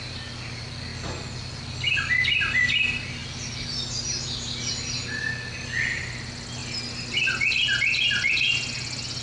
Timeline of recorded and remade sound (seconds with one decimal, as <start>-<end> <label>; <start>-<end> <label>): 0.0-9.2 recorded